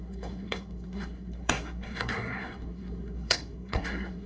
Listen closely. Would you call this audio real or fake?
fake